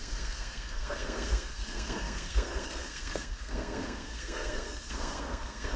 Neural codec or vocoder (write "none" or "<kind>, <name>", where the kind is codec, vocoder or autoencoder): codec, SNAC